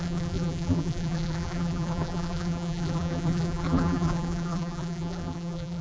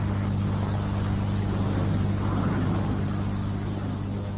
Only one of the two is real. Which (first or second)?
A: second